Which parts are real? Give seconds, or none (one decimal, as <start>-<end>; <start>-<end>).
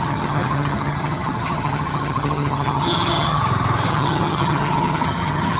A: 3.4-3.9